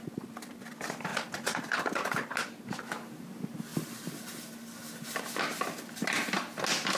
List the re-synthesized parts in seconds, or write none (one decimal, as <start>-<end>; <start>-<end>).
3.7-5.8